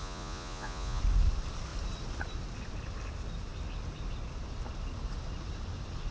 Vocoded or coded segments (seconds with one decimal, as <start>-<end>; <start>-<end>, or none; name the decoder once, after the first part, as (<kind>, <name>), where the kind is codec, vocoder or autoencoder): 0.0-1.0 (vocoder, Vocos)